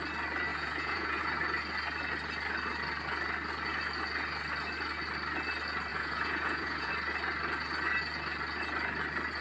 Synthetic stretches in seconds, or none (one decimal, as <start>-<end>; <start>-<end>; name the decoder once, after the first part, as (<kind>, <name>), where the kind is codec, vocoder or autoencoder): 0.5-1.2 (vocoder, Vocos); 5.9-6.9

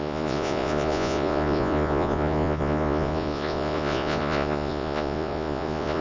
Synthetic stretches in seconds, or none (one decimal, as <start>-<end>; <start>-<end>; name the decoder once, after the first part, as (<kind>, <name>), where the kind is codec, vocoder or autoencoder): 0.0-6.0 (vocoder, Vocos)

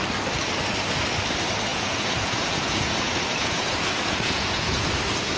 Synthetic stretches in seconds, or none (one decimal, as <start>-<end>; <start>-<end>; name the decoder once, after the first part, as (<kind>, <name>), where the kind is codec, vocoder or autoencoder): 1.7-4.9 (vocoder, Vocos)

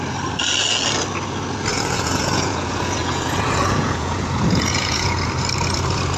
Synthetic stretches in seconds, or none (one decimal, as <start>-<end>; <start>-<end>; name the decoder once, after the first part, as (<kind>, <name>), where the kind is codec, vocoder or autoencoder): 1.7-5.3 (vocoder, Vocos)